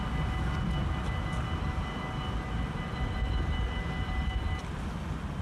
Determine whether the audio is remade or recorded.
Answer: recorded